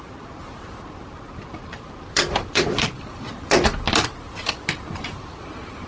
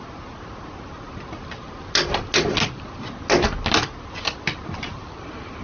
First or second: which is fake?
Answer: first